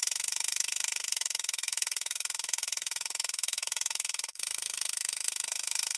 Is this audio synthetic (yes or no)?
yes